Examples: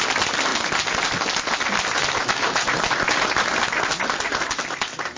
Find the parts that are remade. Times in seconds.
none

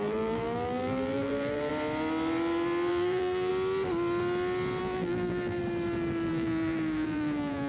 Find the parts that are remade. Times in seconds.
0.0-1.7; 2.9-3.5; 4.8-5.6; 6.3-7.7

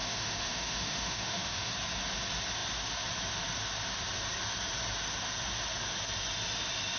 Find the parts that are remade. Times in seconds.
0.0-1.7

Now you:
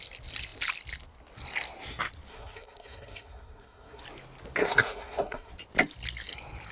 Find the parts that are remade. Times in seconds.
2.3-4.0; 4.6-5.5